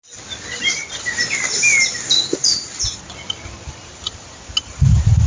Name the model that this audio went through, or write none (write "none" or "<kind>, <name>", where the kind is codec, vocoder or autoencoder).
none